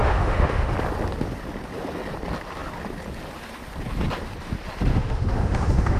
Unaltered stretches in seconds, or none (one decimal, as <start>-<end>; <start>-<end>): 0.7-4.9